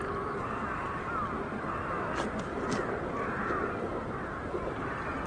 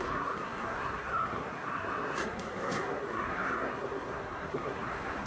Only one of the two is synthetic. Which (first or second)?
second